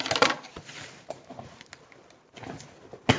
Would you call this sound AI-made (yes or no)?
no